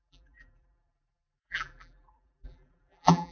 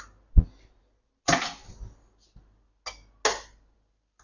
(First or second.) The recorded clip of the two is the second